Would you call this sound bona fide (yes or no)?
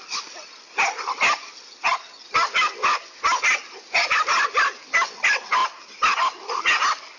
yes